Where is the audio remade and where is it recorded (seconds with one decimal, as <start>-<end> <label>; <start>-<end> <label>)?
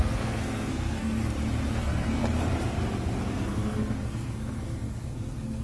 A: 0.0-1.2 remade; 1.2-1.8 recorded; 1.8-2.2 remade; 2.2-3.3 recorded; 3.3-5.6 remade